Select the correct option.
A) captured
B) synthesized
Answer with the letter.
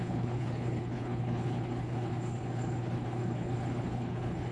B